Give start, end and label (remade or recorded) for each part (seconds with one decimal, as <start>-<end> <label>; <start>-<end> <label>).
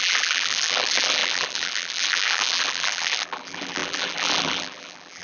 0.0-5.2 remade